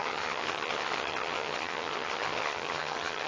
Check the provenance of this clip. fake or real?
fake